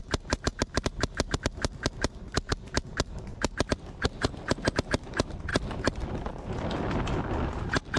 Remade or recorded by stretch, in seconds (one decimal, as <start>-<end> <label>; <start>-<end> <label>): 0.0-8.0 recorded